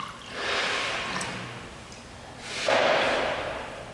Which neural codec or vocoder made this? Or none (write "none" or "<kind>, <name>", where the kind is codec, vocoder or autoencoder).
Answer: none